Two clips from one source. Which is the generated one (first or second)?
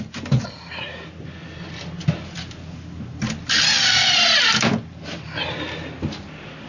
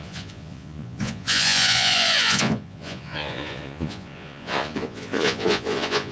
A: second